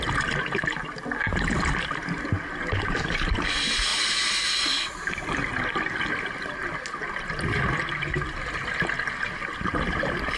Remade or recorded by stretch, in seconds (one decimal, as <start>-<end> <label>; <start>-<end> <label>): 0.0-10.4 recorded